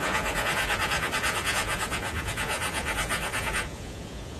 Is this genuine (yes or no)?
no